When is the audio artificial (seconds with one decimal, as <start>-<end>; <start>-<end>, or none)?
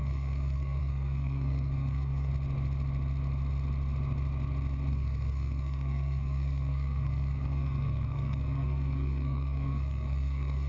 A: 0.0-2.3; 4.9-10.7